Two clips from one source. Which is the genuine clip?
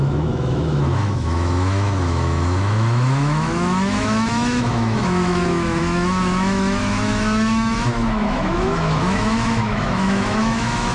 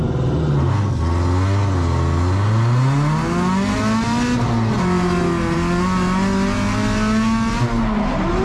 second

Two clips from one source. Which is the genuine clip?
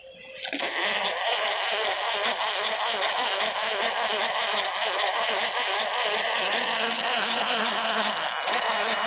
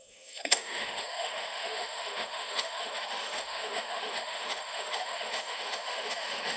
first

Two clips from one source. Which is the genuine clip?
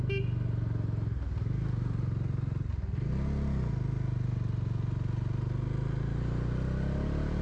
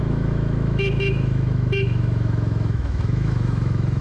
first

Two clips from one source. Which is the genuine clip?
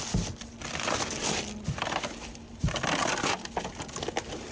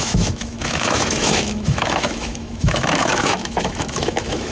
first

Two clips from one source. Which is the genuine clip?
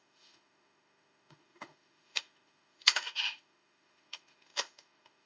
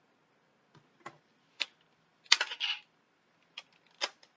second